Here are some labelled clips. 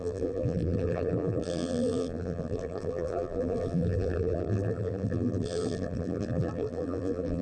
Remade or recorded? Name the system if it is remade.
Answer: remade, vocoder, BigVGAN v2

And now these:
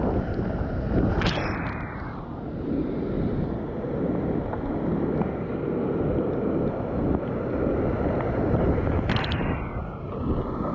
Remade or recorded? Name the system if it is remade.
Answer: recorded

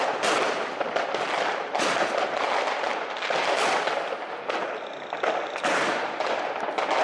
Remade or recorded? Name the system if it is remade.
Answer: recorded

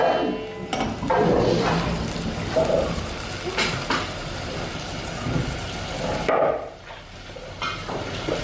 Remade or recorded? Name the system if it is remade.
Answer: recorded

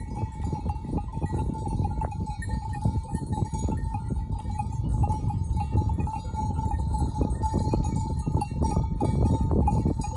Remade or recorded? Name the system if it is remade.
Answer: recorded